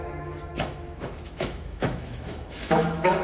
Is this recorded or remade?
remade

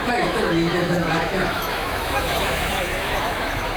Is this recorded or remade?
remade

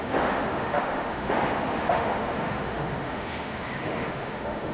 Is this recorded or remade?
remade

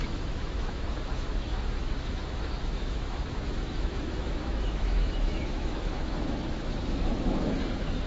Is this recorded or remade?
remade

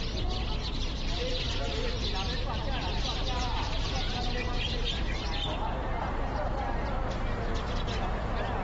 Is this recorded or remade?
recorded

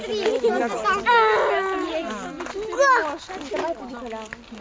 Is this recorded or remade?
recorded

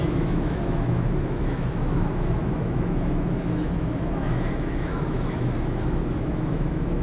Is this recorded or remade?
remade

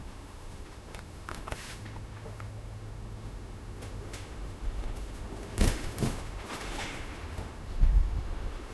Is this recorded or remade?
remade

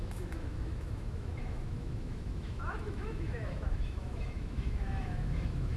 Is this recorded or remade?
remade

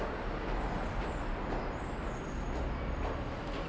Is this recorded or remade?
recorded